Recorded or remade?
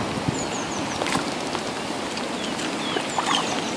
recorded